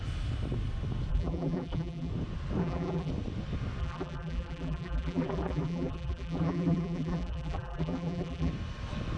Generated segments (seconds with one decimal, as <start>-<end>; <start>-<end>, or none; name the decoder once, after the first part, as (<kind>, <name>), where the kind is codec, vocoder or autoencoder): 1.1-2.1 (vocoder, BigVGAN v2); 2.6-3.1; 3.8-8.5